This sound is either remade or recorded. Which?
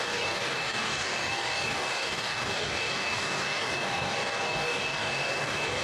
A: remade